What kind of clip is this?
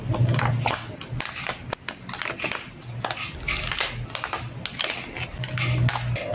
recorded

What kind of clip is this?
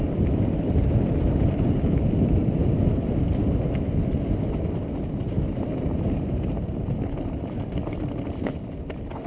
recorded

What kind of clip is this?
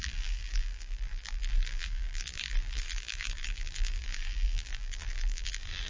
remade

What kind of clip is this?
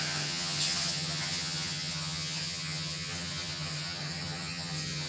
remade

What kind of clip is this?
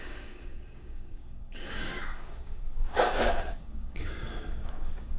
remade